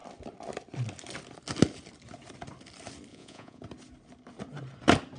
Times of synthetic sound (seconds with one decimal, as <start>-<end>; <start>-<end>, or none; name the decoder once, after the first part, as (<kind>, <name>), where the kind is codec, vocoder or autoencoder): 3.1-3.6 (vocoder, Vocos)